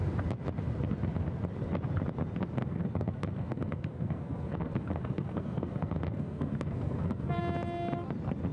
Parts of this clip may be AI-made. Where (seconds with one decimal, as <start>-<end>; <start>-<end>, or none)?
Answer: 2.6-7.4